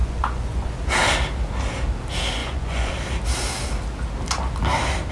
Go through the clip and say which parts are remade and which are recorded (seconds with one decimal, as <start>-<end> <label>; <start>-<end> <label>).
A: 0.0-0.7 remade; 0.7-2.4 recorded; 2.4-2.9 remade; 2.9-5.1 recorded